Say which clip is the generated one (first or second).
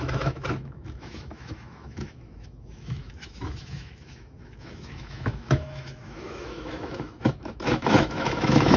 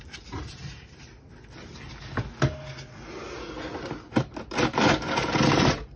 first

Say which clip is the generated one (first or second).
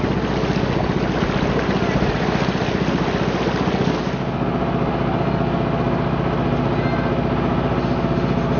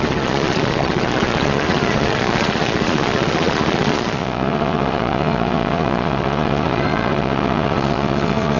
second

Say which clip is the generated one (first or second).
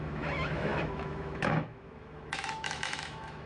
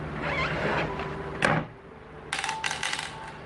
first